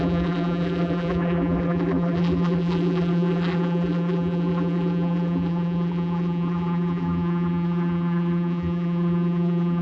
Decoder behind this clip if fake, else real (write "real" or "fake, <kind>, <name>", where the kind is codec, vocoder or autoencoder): fake, vocoder, BigVGAN v2